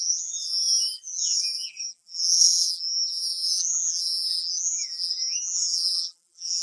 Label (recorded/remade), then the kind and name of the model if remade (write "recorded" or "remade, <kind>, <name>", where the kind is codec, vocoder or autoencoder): remade, vocoder, BigVGAN v2